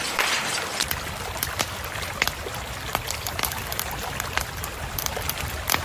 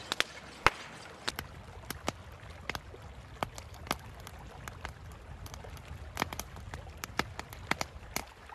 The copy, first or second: first